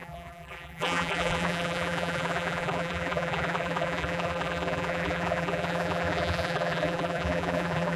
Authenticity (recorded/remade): remade